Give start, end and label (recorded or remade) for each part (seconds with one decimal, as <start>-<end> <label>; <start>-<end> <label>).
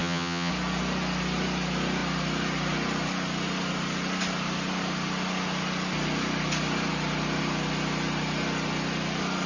0.0-0.5 remade; 0.5-9.5 recorded